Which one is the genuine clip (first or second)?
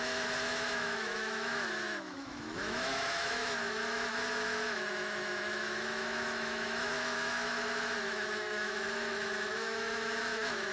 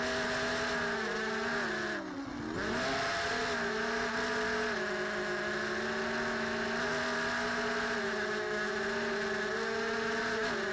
second